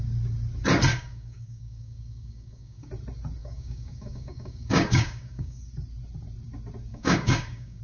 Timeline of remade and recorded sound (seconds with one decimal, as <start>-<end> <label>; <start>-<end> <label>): 0.0-0.9 recorded; 0.9-2.9 remade; 2.9-3.4 recorded; 3.4-5.6 remade; 5.6-6.9 recorded; 6.9-7.8 remade